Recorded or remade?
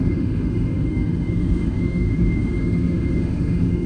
remade